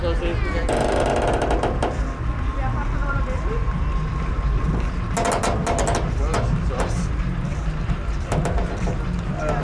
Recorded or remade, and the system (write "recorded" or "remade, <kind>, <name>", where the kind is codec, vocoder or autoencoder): recorded